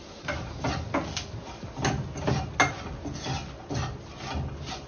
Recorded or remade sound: recorded